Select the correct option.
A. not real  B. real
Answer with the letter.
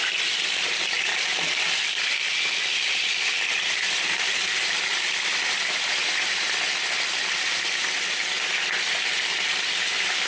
B